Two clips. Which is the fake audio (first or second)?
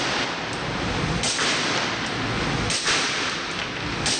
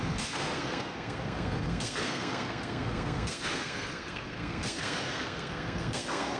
second